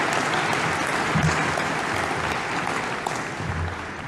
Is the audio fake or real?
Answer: real